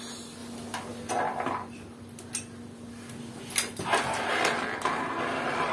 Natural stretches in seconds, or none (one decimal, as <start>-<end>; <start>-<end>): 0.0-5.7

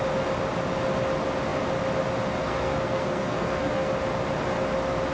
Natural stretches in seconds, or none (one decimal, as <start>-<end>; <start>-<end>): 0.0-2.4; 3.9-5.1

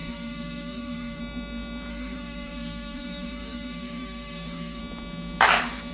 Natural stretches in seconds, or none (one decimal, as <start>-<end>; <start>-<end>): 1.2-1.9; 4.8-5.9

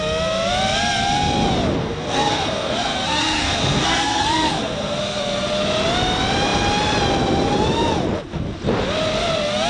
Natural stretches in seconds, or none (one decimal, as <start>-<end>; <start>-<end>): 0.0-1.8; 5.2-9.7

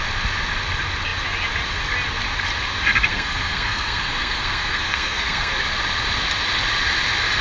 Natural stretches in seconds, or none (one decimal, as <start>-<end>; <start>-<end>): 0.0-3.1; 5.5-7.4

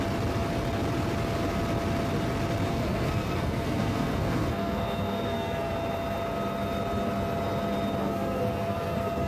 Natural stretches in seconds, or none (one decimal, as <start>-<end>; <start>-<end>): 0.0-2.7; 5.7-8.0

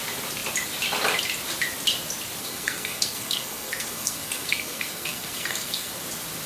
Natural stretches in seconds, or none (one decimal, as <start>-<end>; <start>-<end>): 0.0-2.4; 6.0-6.5